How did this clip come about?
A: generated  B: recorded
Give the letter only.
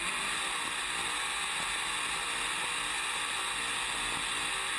B